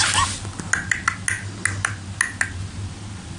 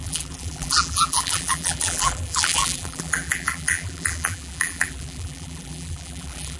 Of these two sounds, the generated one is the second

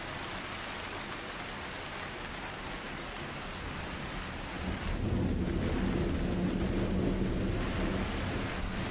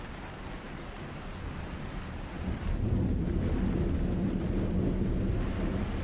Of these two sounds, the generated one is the second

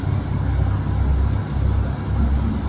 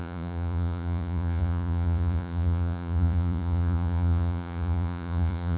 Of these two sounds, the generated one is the second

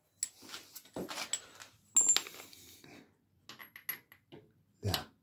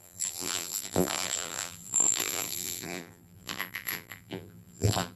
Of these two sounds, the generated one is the second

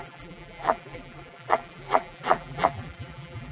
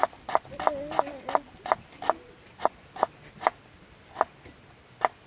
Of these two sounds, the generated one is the first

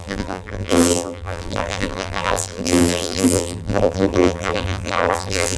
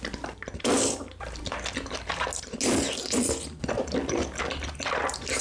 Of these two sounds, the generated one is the first